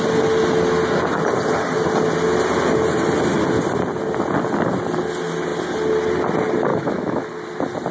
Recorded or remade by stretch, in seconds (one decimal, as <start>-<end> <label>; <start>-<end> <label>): 0.0-6.7 recorded; 6.7-7.2 remade; 7.2-7.9 recorded